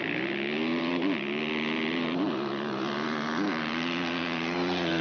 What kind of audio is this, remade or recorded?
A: remade